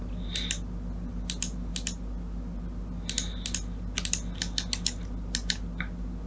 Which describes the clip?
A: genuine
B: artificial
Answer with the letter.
A